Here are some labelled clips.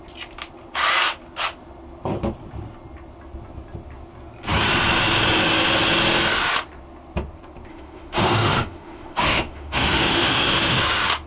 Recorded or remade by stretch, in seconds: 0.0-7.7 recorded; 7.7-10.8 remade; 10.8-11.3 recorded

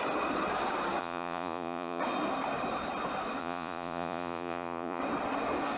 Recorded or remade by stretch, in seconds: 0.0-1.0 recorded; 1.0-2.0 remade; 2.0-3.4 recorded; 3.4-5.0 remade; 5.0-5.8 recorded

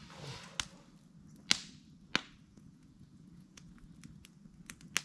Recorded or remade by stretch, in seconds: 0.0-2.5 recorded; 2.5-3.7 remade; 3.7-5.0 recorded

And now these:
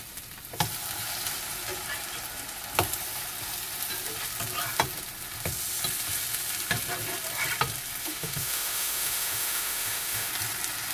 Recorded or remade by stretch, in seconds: 0.0-8.0 recorded; 8.0-10.3 remade; 10.3-10.9 recorded